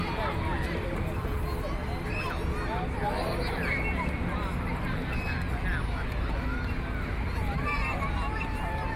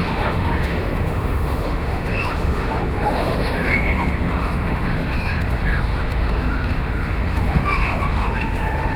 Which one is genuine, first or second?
first